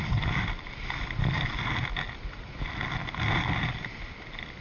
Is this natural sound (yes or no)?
yes